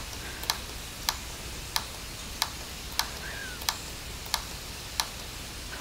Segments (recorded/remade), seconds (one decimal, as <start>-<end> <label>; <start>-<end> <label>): 0.0-5.8 recorded